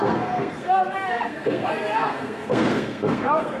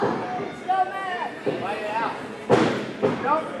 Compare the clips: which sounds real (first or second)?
second